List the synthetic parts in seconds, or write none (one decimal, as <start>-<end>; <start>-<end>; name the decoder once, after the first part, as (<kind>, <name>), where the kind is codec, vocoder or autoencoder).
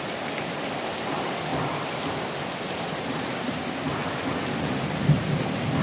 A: none